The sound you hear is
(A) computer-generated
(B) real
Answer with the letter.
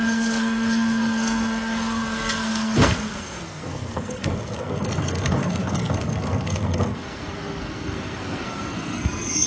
A